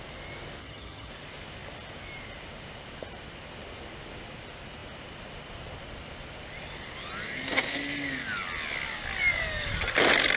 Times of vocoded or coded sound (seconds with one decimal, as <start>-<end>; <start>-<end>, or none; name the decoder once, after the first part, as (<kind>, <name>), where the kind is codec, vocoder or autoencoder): 0.6-1.1 (vocoder, HiFi-GAN)